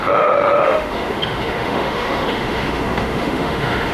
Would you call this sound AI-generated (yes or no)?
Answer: yes